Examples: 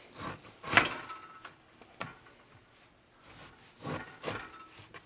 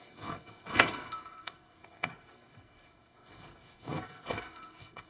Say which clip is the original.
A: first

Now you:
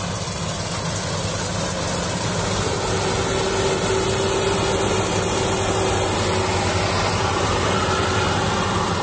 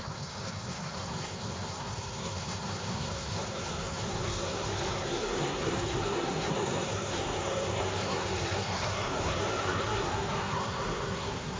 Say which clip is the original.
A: first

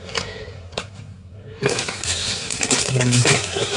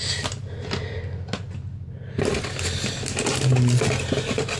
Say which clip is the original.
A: second